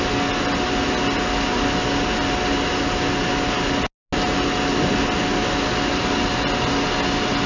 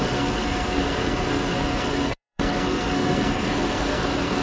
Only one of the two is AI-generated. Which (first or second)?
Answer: second